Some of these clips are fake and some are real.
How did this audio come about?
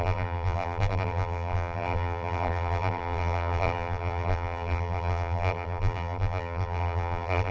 fake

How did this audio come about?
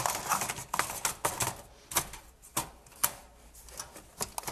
real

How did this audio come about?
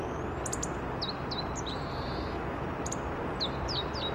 real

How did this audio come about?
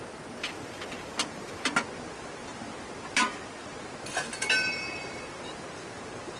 real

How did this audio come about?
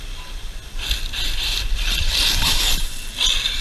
real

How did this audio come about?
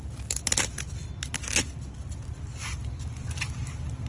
real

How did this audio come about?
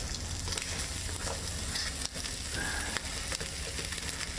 real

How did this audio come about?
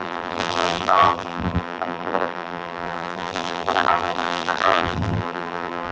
fake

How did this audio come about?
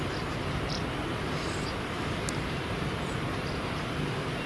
fake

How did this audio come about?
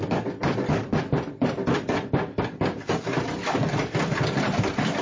fake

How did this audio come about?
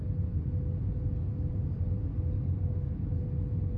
real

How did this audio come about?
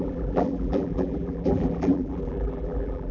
fake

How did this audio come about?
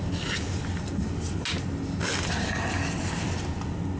real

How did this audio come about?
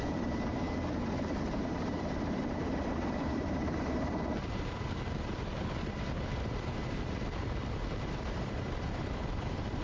fake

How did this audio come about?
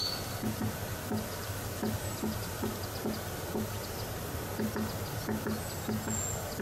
real